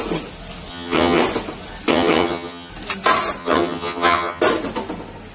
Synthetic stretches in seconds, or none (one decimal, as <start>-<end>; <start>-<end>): 0.7-1.2; 1.9-2.7; 3.4-4.4